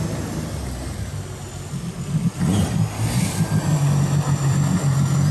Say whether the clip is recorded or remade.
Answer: recorded